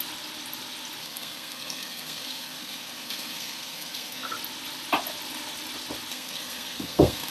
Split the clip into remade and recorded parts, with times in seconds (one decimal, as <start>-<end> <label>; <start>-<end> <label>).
0.0-1.0 recorded; 1.0-4.3 remade; 4.3-6.1 recorded; 6.1-7.3 remade